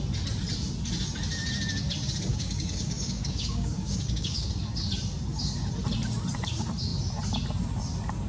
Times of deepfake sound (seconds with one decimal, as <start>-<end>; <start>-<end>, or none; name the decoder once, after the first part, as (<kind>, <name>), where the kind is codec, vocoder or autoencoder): 2.3-4.5 (codec, DAC)